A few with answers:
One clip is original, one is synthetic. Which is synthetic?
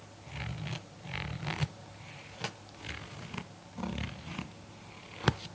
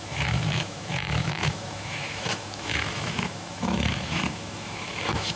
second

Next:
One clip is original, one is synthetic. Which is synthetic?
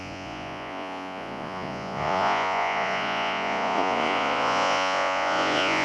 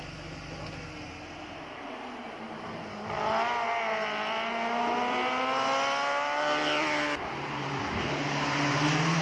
first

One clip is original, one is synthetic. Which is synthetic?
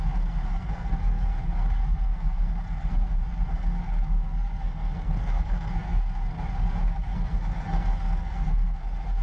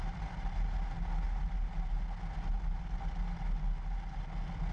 first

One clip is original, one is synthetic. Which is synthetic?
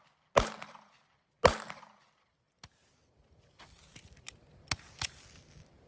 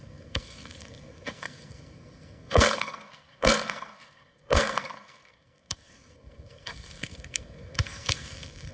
second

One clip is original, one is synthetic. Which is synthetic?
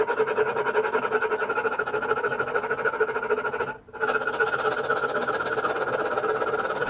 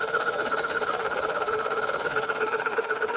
second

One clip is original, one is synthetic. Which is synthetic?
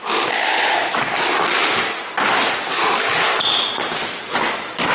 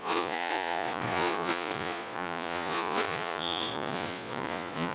second